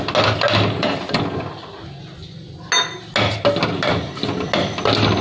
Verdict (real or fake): real